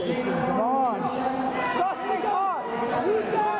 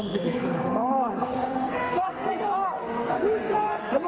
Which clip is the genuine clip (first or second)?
first